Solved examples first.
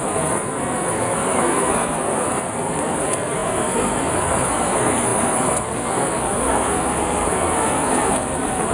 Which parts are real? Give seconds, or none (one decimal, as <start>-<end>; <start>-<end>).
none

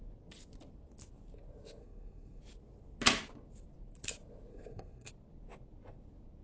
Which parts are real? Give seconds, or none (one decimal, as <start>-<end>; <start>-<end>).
0.0-1.8; 2.4-4.5; 5.1-6.4

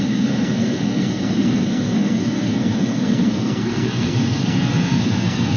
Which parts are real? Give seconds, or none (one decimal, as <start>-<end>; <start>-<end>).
none